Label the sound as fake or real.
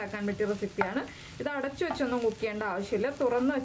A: real